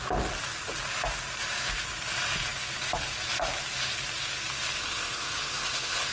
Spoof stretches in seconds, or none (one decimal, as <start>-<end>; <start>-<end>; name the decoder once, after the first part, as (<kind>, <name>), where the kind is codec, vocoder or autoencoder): 4.8-6.1 (codec, HILCodec)